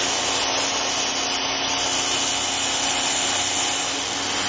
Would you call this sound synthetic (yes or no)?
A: no